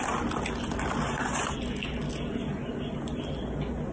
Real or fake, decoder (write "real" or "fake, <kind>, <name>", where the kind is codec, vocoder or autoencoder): real